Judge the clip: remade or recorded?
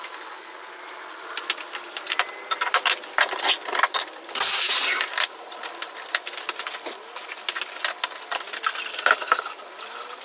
recorded